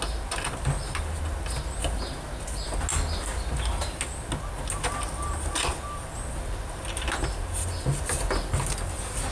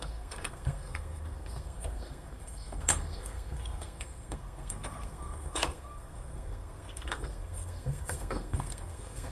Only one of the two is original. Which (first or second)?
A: first